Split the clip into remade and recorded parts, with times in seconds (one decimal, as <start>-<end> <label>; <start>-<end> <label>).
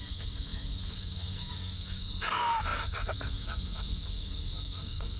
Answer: 0.0-5.2 remade